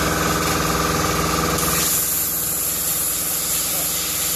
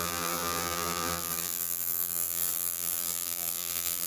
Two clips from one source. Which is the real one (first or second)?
first